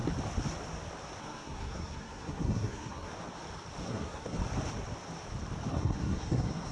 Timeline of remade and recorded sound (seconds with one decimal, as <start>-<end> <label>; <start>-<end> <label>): 0.0-1.2 recorded; 1.2-3.1 remade; 3.1-3.8 recorded; 3.8-4.4 remade; 4.4-5.7 recorded; 5.7-6.7 remade